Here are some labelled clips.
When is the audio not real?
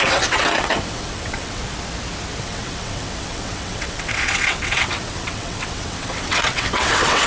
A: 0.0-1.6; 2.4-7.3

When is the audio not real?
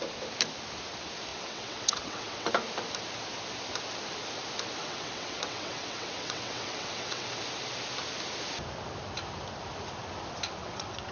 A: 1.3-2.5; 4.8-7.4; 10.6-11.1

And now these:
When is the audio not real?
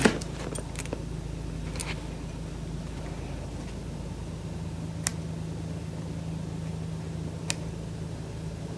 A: none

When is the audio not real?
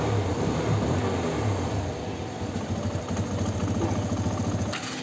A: none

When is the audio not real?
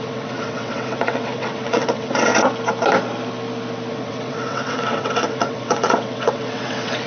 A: 0.0-2.3; 3.9-7.1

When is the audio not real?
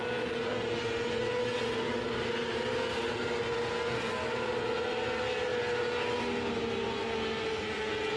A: none